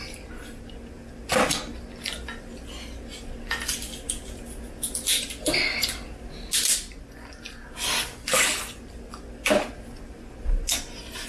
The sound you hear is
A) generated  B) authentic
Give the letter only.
B